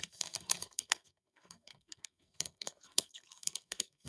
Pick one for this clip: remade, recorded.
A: remade